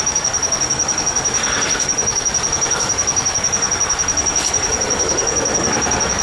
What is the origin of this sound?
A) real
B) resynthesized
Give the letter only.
B